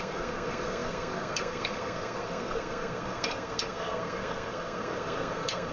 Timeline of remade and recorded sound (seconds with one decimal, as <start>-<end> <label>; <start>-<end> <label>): 0.0-5.7 remade

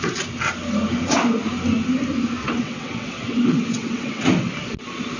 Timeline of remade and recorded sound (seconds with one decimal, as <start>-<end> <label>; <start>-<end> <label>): 0.0-2.4 recorded; 2.4-4.2 remade; 4.2-5.2 recorded

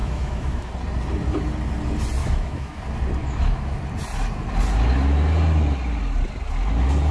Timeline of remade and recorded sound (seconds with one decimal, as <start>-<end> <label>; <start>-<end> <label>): 0.0-0.7 remade; 0.7-2.2 recorded; 2.2-2.8 remade; 2.8-3.2 recorded; 3.2-3.8 remade; 3.8-7.1 recorded

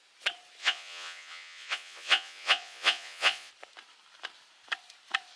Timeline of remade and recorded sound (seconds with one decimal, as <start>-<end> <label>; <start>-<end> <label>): 0.0-0.6 recorded; 0.6-3.5 remade; 3.5-5.4 recorded

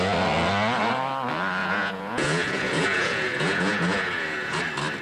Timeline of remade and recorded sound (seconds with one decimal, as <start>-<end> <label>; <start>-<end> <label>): 0.0-1.6 recorded; 1.6-4.6 remade; 4.6-5.0 recorded

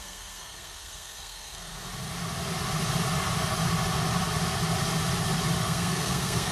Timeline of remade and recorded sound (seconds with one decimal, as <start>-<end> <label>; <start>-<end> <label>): 0.0-1.7 remade; 1.7-5.6 recorded; 5.6-6.5 remade

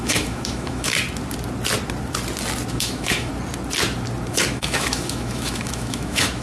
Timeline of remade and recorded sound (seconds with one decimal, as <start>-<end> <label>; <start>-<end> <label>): 0.0-0.9 remade; 0.9-2.7 recorded; 2.7-3.3 remade; 3.3-4.3 recorded; 4.3-6.4 remade

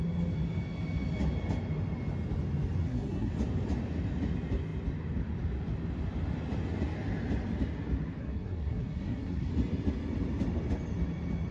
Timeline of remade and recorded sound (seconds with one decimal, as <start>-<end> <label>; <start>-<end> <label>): 0.0-2.8 recorded; 2.8-3.3 remade; 3.3-8.2 recorded; 8.2-9.5 remade; 9.5-11.5 recorded